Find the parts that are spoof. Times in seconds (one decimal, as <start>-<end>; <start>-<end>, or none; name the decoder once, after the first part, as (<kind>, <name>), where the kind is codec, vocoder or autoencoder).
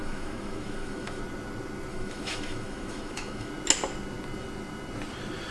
0.0-1.2 (autoencoder, DAC-VAE); 1.9-3.5